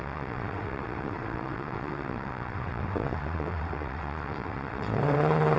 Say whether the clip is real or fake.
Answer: fake